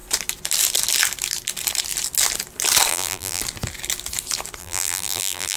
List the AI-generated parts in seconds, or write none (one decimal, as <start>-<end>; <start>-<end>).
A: 2.9-3.4; 4.6-5.6